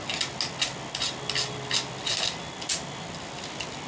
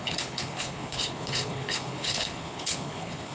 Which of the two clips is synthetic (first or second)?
second